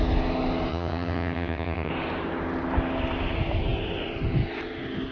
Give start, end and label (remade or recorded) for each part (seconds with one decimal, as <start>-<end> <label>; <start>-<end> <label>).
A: 0.0-0.7 recorded; 0.7-1.9 remade; 1.9-5.1 recorded